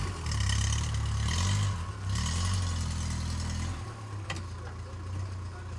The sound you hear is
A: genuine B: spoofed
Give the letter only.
A